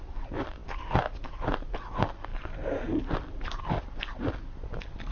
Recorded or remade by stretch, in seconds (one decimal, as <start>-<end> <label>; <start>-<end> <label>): 0.0-5.1 recorded